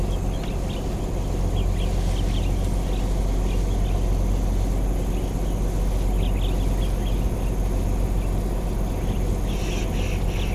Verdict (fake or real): real